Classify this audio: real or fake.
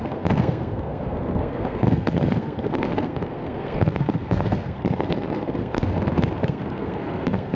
fake